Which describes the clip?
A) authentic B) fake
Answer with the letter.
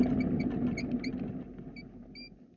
A